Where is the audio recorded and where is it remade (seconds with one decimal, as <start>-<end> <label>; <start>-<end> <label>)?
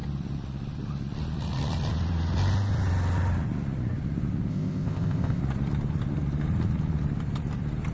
0.0-4.5 recorded; 4.5-5.4 remade; 5.4-7.9 recorded